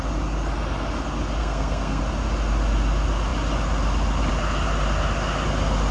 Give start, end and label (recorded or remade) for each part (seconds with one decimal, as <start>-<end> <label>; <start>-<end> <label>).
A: 0.0-1.4 recorded; 1.4-2.0 remade; 2.0-5.9 recorded